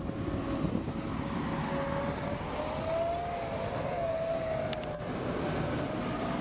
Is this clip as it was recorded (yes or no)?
yes